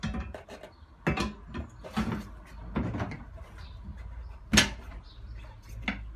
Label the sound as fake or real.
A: real